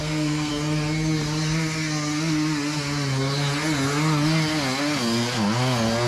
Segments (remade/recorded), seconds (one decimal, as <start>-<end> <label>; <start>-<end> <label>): 0.0-0.5 remade; 0.5-6.1 recorded